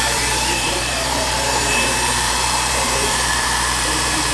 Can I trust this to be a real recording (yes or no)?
no